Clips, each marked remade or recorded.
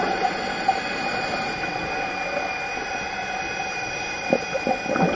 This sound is recorded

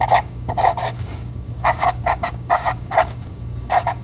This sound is remade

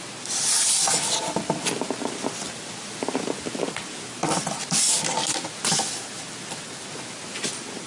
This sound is recorded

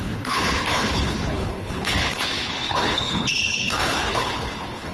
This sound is remade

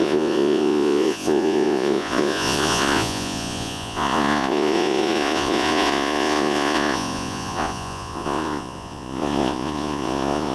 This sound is remade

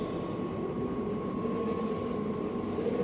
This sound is recorded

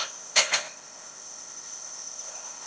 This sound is remade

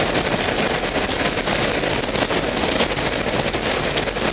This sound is recorded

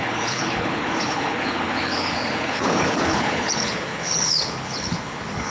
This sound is remade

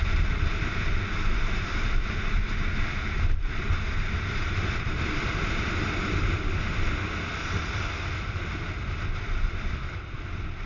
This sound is recorded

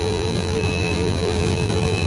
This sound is remade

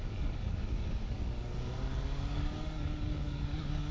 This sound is remade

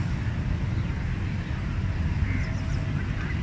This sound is recorded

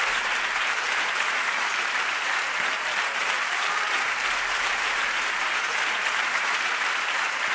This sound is remade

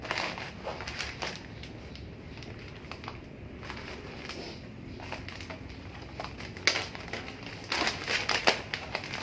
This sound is recorded